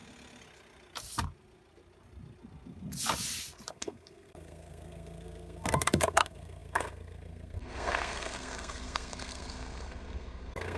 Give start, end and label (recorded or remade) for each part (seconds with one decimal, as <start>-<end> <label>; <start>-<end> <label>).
0.0-3.7 recorded; 3.7-10.8 remade